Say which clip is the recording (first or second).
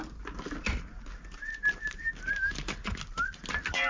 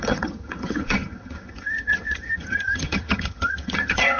first